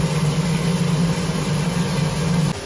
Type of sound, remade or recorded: recorded